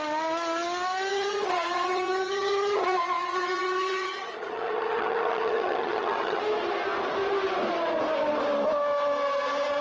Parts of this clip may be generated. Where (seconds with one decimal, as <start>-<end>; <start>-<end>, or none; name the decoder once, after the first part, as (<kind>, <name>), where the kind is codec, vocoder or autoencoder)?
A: 1.1-6.4 (vocoder, HiFi-GAN)